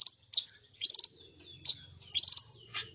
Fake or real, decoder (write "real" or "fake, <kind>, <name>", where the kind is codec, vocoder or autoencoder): real